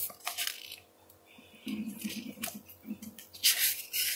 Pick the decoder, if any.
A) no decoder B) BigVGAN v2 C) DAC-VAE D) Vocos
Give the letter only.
A